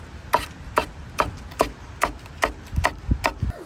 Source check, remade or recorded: recorded